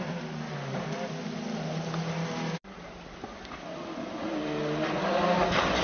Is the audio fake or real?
real